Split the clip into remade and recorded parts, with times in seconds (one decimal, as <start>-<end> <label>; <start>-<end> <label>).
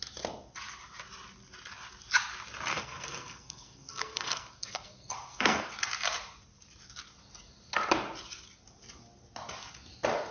0.0-2.7 recorded; 2.7-5.7 remade; 5.7-10.3 recorded